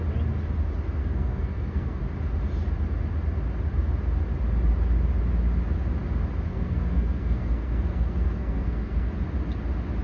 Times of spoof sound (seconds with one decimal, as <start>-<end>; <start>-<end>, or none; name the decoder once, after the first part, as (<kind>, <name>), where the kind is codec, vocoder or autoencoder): 1.0-2.0 (codec, SNAC); 6.5-9.1